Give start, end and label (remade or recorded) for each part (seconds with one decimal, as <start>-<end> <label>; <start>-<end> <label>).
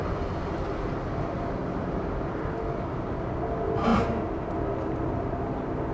0.0-0.6 remade; 0.6-5.9 recorded